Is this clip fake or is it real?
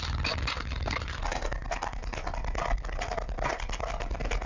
real